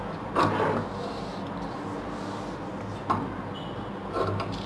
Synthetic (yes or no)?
no